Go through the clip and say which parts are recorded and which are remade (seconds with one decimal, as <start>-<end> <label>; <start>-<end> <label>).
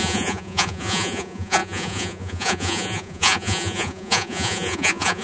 0.0-5.2 remade